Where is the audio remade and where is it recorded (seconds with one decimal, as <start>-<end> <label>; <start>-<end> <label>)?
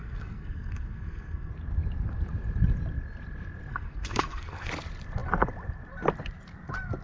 0.0-1.5 remade; 1.5-3.7 recorded; 3.7-4.7 remade; 4.7-7.0 recorded